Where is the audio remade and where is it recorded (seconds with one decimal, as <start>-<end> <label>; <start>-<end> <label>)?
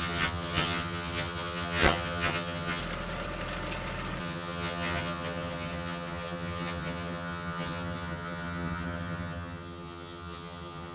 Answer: 0.0-2.8 remade; 2.8-4.2 recorded; 4.2-10.9 remade